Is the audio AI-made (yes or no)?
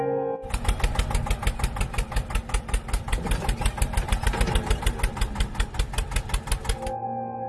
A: no